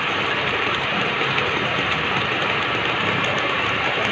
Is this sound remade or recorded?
remade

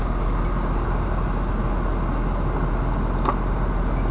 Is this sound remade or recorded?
recorded